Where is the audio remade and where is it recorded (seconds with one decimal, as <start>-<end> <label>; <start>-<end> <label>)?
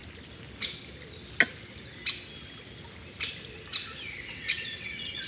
0.0-4.2 recorded; 4.2-5.3 remade